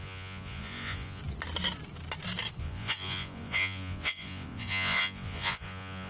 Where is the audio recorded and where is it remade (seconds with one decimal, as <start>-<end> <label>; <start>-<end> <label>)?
0.0-1.2 remade; 1.2-2.6 recorded; 2.6-6.1 remade